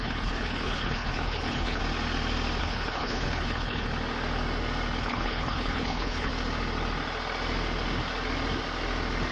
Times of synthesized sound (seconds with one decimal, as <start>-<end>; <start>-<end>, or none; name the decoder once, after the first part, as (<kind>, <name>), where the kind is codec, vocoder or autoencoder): 0.0-1.8 (codec, HILCodec); 2.6-3.9; 5.0-6.3